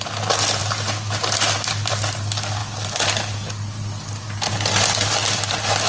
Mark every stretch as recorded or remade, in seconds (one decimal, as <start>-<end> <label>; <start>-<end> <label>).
0.0-5.9 recorded